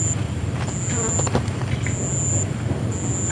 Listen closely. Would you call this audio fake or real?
real